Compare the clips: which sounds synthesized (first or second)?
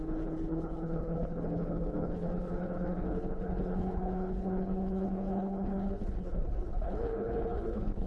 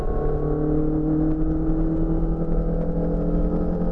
first